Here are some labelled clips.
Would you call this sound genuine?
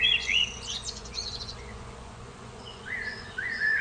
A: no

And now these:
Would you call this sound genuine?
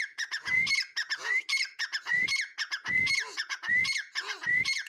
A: no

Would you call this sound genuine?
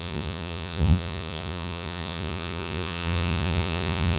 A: no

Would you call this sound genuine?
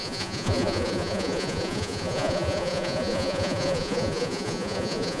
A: no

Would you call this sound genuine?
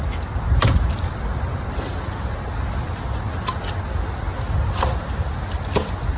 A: yes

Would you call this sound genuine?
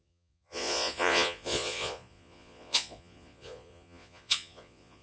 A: no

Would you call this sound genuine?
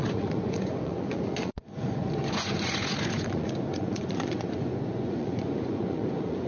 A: no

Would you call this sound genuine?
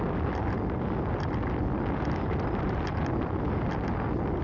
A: yes